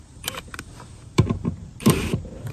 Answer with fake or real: fake